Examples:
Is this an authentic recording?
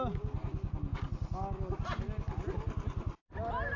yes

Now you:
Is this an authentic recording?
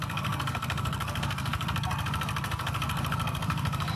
no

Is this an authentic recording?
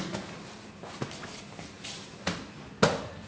yes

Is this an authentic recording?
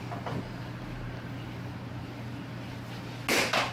yes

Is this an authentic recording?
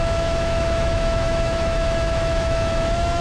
no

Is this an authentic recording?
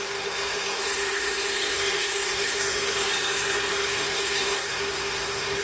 no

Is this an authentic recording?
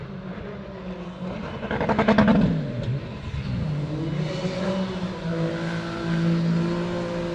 yes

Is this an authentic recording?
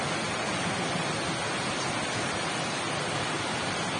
yes